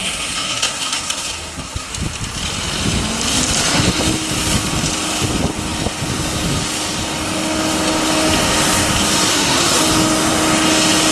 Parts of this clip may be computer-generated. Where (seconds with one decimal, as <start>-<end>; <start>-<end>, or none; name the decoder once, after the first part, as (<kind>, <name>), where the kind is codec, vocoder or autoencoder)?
0.0-1.9 (codec, SNAC); 9.3-9.8